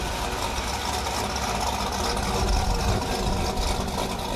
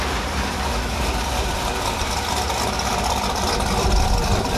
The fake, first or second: second